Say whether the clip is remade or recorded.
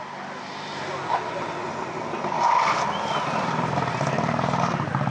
recorded